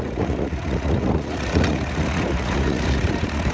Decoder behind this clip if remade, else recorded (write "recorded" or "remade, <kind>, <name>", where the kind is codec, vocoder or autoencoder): remade, vocoder, Vocos